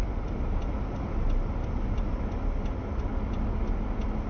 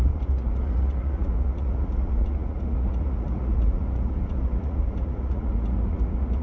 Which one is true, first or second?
first